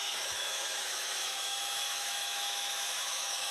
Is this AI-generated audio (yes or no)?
yes